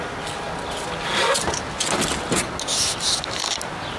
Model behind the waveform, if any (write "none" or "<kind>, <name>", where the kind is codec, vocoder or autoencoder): none